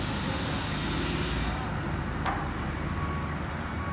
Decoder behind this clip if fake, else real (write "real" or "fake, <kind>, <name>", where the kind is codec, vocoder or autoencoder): real